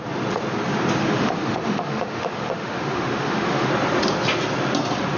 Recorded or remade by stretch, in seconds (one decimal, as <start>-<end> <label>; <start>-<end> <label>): 0.0-1.0 recorded; 1.0-3.7 remade; 3.7-5.2 recorded